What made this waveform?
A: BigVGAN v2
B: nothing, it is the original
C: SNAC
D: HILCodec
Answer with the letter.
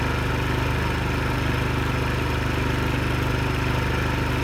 B